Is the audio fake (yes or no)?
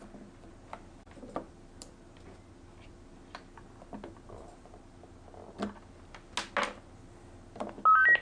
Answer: no